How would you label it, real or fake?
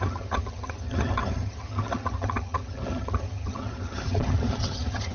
fake